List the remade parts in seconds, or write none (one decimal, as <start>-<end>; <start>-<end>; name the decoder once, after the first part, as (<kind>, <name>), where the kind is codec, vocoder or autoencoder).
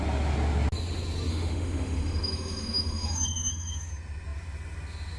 1.3-3.9 (autoencoder, DAC-VAE)